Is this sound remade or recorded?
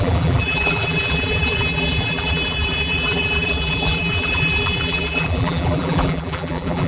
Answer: remade